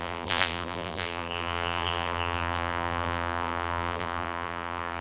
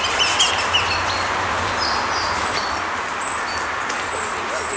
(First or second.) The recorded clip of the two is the second